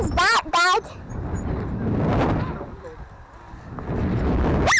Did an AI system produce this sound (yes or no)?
no